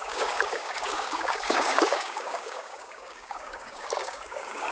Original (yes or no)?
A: no